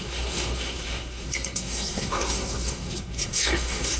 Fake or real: fake